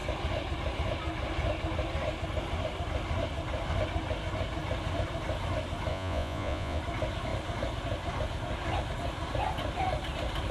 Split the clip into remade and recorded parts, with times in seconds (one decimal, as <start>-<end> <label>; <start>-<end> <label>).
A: 0.0-5.9 recorded; 5.9-6.8 remade; 6.8-10.5 recorded